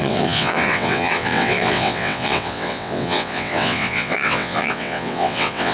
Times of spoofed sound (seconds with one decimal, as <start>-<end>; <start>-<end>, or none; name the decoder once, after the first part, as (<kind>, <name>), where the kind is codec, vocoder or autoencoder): 0.0-5.7 (vocoder, WaveNeXt)